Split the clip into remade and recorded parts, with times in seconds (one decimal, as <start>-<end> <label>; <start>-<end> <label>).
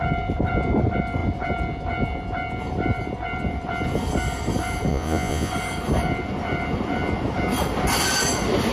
0.0-4.9 recorded; 4.9-5.5 remade; 5.5-8.7 recorded